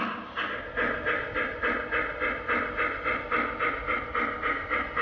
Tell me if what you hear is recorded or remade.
recorded